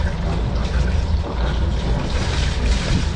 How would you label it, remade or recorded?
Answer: recorded